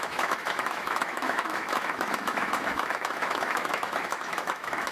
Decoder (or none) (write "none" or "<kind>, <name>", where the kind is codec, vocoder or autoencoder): autoencoder, DAC-VAE